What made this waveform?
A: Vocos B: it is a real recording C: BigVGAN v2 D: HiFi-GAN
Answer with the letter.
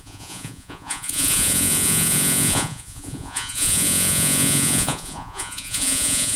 A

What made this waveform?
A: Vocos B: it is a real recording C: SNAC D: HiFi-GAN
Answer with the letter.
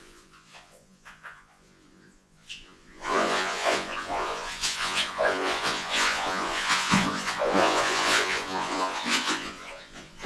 A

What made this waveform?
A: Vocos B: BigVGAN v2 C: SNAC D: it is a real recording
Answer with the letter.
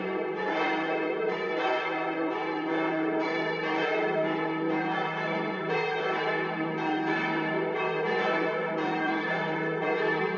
A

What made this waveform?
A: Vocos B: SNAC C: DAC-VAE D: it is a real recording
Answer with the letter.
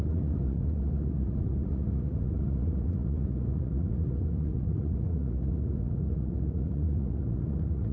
A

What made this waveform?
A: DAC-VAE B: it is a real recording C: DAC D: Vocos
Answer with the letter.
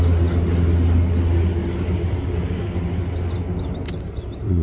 B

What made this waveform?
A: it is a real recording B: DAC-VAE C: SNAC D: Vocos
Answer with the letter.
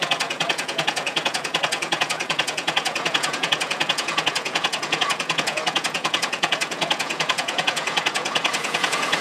D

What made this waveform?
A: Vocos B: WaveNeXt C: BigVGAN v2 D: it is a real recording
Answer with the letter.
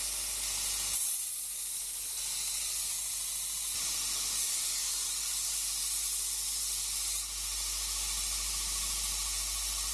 D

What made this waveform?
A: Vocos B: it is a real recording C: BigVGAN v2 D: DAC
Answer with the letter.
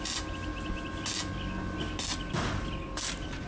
B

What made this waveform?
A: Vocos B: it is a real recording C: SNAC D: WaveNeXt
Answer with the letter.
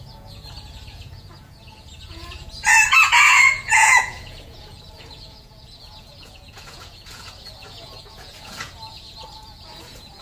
A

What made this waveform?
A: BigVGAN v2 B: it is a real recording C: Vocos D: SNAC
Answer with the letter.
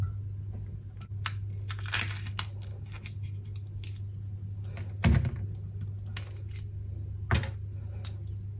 B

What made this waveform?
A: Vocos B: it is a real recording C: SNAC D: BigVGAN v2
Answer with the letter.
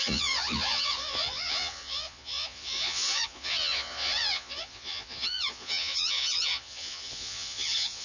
A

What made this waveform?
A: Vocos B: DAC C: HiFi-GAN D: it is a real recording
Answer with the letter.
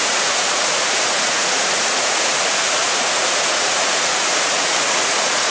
A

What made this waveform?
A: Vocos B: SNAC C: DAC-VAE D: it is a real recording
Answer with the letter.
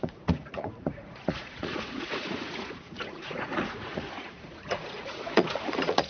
A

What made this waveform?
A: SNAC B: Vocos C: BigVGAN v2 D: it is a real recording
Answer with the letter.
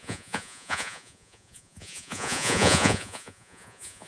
B